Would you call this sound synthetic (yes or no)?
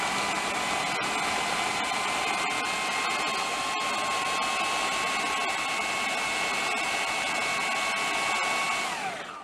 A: no